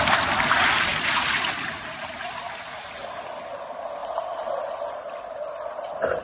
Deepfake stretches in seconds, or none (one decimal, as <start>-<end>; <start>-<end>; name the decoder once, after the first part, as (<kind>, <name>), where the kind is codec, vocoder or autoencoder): 4.0-5.3 (vocoder, BigVGAN v2)